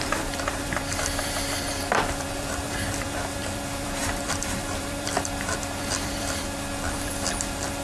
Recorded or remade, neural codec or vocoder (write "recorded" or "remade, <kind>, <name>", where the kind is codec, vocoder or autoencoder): remade, vocoder, BigVGAN v2